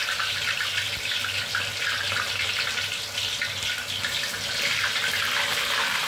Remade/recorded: recorded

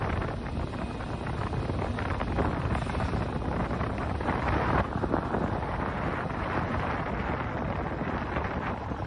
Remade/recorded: recorded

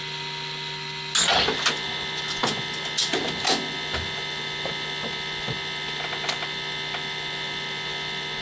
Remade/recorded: recorded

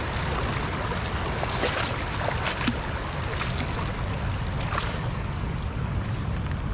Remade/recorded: recorded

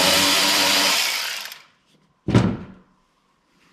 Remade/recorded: remade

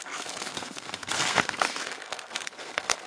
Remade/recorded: remade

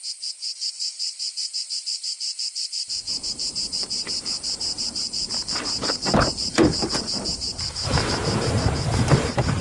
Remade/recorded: remade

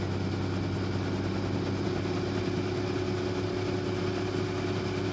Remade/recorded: recorded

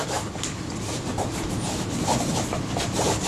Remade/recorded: recorded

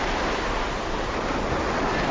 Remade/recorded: recorded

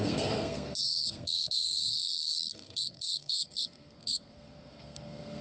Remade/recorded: remade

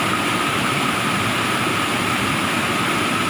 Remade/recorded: recorded